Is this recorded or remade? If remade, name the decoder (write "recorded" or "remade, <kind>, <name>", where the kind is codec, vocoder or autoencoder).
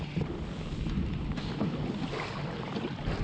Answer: recorded